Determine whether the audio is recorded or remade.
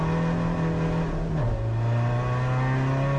recorded